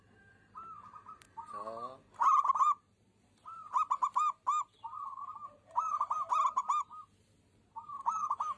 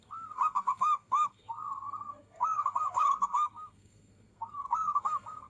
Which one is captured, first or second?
first